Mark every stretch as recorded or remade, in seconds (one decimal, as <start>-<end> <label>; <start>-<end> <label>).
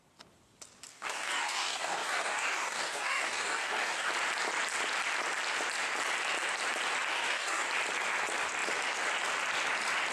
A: 0.0-0.9 recorded; 0.9-4.1 remade; 4.1-7.1 recorded; 7.1-7.7 remade; 7.7-10.1 recorded